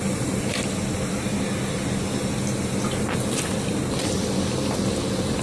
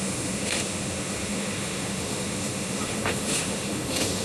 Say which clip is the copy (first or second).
second